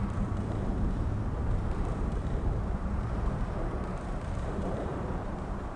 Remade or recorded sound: remade